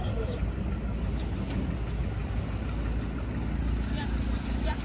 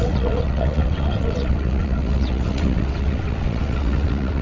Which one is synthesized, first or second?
second